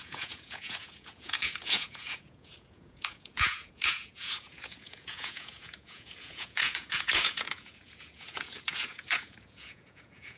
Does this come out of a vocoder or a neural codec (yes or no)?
yes